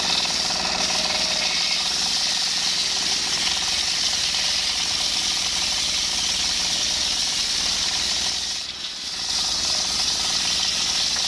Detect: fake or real real